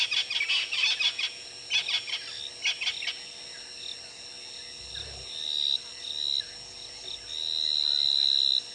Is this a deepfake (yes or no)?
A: no